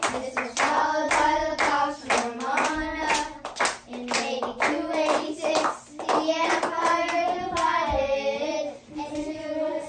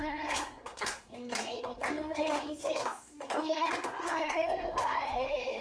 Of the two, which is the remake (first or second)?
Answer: second